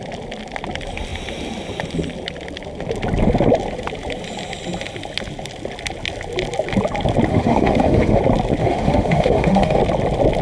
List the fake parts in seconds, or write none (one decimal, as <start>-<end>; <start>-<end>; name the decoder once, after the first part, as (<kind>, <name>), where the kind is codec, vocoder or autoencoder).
7.3-8.2 (autoencoder, DAC-VAE); 8.6-9.8

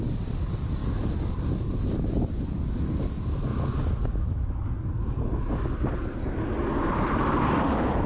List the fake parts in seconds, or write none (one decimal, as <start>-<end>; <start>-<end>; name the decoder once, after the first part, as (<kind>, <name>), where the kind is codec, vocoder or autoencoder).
0.0-0.8 (vocoder, BigVGAN v2); 2.1-3.5; 6.8-8.1

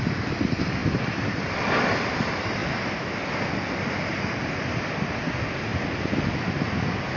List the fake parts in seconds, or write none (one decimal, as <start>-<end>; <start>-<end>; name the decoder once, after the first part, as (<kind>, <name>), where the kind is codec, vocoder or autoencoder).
0.0-0.8 (vocoder, BigVGAN v2); 1.4-2.6; 3.8-7.2